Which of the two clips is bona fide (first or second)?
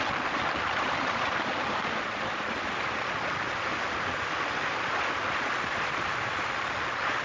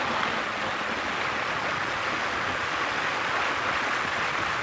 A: second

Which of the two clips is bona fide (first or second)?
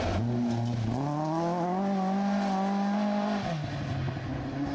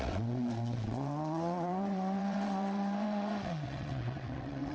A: first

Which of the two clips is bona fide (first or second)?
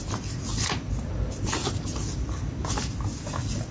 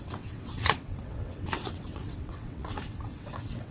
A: first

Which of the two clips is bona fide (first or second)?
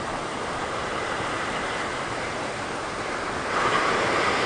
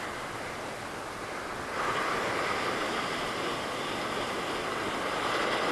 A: second